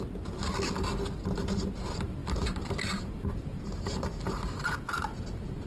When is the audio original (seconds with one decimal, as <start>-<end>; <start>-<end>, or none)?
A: 0.0-2.2

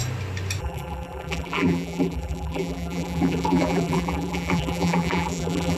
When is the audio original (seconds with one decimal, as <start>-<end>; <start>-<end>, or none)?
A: 0.0-0.6

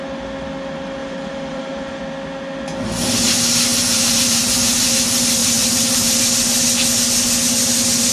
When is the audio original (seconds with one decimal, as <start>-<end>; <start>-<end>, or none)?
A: 0.0-1.0; 2.0-3.7; 5.0-5.4; 6.2-8.1

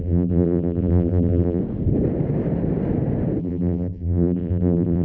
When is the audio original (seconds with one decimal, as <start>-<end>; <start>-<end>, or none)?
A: 1.6-3.4

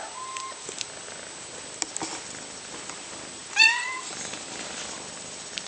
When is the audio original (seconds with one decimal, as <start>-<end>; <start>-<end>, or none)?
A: 0.0-3.4; 4.1-5.7